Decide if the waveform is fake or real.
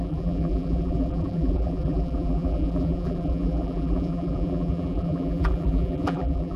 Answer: fake